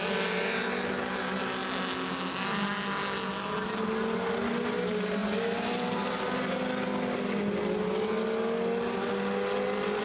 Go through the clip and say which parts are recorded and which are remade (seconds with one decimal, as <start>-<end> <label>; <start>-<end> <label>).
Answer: 0.0-10.0 recorded